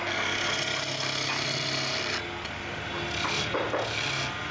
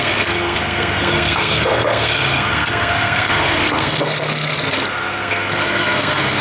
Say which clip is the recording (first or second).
first